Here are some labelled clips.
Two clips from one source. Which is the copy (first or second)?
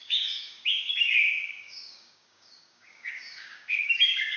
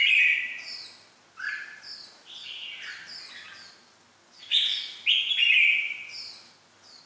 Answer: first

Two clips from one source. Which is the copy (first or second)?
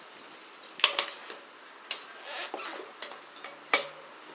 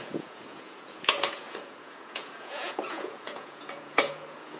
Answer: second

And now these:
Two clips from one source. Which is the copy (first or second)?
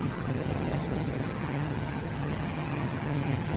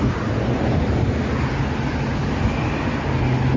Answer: first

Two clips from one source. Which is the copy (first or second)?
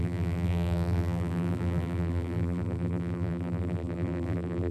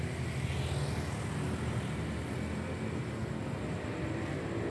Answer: first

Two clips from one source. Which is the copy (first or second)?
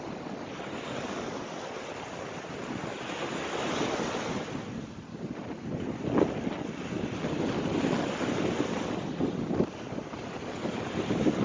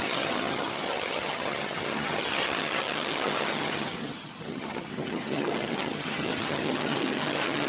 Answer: second